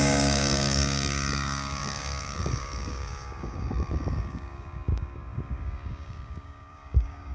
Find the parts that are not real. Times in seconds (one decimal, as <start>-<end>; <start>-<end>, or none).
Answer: 0.0-7.3